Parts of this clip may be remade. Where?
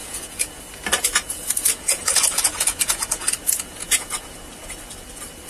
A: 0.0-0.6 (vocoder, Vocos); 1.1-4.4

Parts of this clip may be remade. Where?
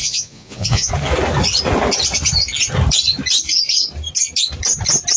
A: 0.0-0.9 (vocoder, Vocos)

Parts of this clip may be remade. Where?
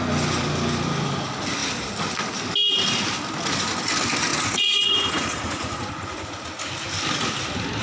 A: 4.3-6.5 (vocoder, Vocos)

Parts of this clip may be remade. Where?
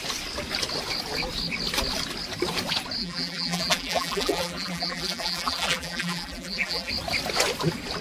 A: 3.0-6.9 (vocoder, BigVGAN v2)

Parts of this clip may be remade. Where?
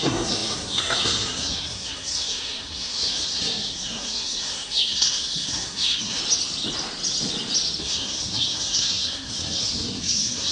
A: 0.0-6.2 (codec, SNAC); 7.8-10.5